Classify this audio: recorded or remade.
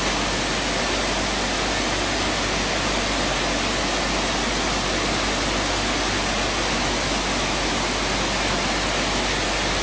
recorded